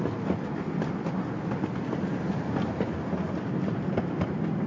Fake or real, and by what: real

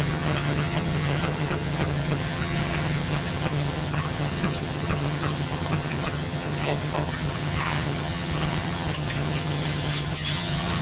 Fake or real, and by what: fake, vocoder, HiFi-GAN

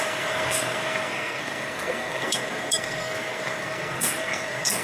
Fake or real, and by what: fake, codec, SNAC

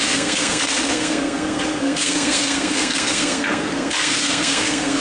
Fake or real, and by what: fake, codec, SNAC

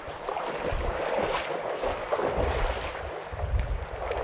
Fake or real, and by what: real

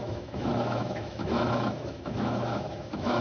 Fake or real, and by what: fake, autoencoder, DAC-VAE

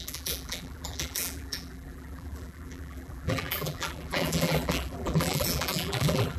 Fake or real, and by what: fake, vocoder, BigVGAN v2